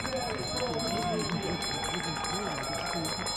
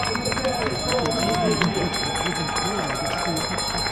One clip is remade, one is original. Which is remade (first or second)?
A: second